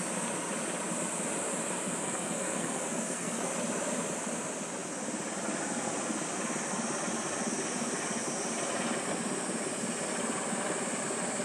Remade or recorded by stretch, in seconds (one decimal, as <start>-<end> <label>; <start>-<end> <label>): 0.0-2.0 recorded; 2.0-3.5 remade; 3.5-11.4 recorded